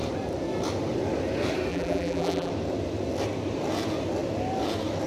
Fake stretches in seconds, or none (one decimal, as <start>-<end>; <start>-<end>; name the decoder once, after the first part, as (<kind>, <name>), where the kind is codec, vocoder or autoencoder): 1.7-2.5 (vocoder, BigVGAN v2)